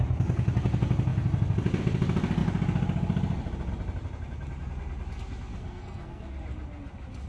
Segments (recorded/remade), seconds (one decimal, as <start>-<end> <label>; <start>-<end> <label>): 0.0-5.5 recorded; 5.5-6.3 remade; 6.3-7.3 recorded